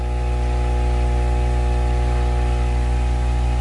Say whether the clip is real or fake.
real